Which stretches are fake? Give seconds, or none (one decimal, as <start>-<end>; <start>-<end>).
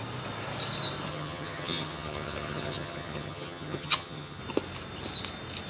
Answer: 1.1-4.4